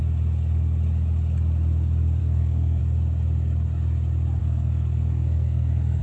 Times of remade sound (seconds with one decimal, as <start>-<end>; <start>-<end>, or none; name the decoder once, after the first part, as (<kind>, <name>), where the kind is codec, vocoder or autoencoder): 2.2-2.8 (codec, SNAC); 4.4-6.0